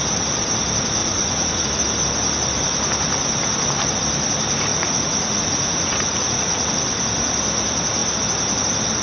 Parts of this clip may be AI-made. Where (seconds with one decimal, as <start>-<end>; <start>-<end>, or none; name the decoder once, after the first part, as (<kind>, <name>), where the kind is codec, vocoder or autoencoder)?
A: 1.0-1.6 (vocoder, Vocos); 4.7-6.7